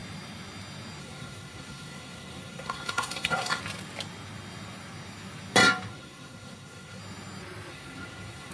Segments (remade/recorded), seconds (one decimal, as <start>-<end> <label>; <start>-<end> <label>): 0.0-1.0 recorded; 1.0-3.6 remade; 3.6-5.9 recorded; 5.9-7.0 remade; 7.0-7.7 recorded; 7.7-8.5 remade